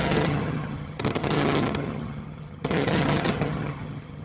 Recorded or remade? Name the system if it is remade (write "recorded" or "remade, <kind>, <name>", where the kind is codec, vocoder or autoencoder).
remade, vocoder, HiFi-GAN